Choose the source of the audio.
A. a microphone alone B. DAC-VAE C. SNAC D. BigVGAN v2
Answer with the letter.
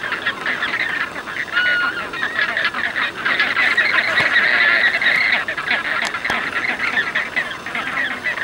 A